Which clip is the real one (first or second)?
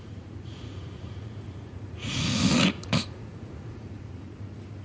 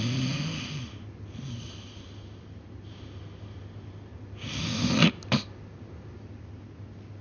second